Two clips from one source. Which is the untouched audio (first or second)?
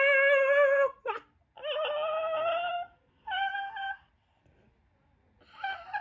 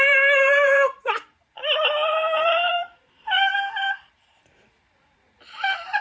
first